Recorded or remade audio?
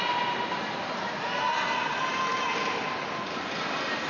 recorded